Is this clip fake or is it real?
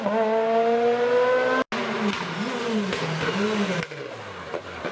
real